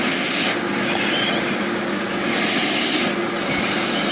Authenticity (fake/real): real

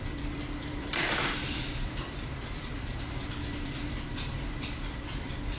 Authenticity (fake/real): fake